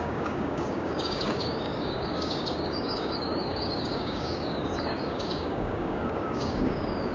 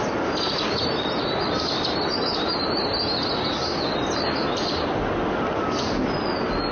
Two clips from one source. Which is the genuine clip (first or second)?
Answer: second